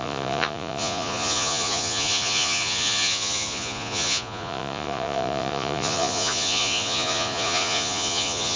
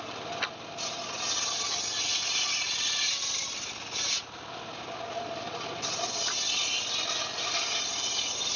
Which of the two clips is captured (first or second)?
second